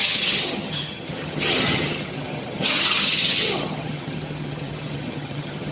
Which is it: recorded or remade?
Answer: remade